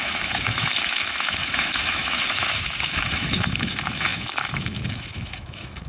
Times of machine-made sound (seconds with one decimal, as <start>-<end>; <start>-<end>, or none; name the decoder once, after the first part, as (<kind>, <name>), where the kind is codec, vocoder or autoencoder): 0.0-5.9 (autoencoder, DAC-VAE)